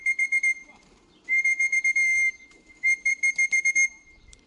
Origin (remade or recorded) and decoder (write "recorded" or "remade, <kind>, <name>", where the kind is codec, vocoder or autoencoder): remade, vocoder, BigVGAN v2